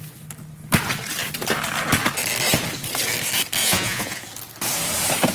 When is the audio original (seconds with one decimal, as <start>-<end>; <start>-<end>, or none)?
0.0-3.6; 4.2-5.3